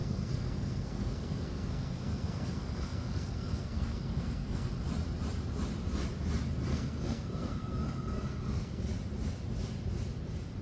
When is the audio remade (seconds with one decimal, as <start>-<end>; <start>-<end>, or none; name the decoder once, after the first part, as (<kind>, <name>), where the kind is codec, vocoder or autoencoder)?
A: 0.0-4.7 (codec, SNAC); 6.7-8.8